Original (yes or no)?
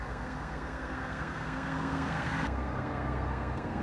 no